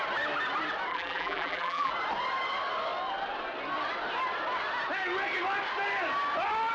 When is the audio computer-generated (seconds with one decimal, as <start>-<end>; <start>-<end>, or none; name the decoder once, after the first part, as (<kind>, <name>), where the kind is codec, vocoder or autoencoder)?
0.9-1.9 (vocoder, BigVGAN v2)